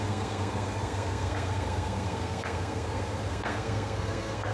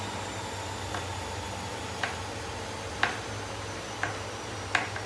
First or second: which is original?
second